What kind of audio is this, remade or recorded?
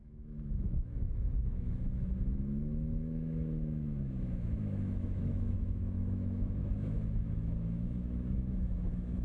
remade